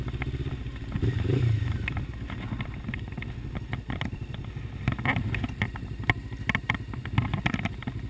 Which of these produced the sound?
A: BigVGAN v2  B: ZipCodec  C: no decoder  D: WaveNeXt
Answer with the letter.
C